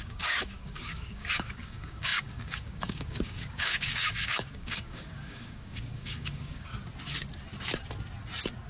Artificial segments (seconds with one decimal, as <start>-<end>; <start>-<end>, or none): 0.0-6.7